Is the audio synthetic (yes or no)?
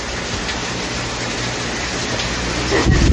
no